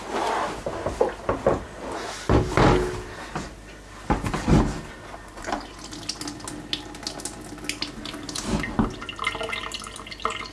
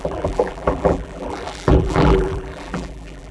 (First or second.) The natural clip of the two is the first